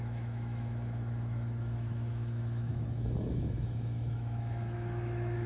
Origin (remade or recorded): remade